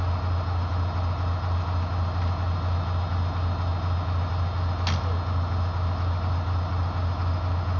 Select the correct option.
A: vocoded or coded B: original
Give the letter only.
B